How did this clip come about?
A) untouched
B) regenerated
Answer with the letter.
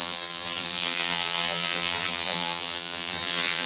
B